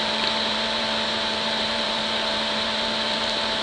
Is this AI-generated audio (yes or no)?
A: yes